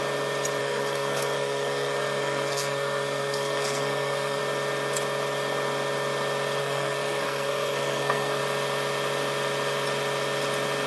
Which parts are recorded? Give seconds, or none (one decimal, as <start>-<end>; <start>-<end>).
0.0-0.6; 4.4-6.6; 8.4-10.9